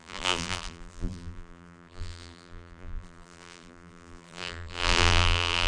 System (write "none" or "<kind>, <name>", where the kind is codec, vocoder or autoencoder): vocoder, BigVGAN v2